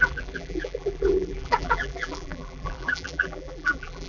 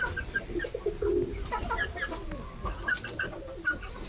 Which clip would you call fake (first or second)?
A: first